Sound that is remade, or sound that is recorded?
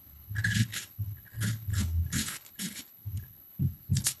remade